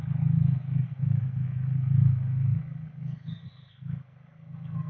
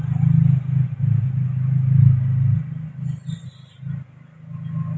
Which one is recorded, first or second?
second